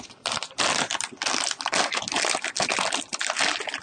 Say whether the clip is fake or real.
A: real